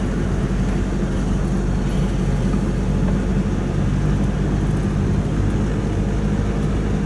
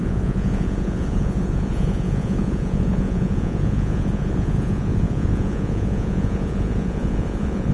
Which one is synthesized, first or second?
second